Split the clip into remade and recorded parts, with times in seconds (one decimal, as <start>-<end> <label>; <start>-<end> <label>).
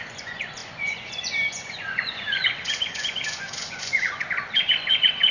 0.0-5.3 remade